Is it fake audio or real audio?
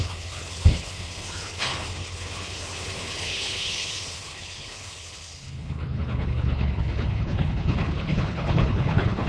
fake